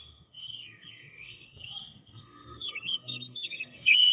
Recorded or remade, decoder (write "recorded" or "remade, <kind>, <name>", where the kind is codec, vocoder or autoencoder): remade, codec, SNAC